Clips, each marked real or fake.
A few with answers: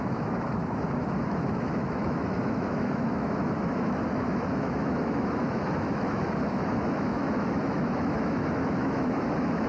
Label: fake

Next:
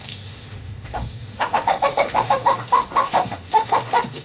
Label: fake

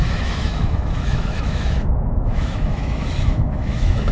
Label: fake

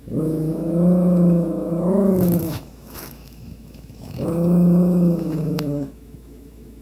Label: fake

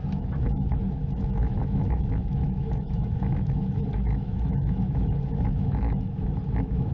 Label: fake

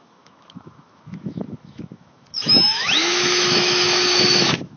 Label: fake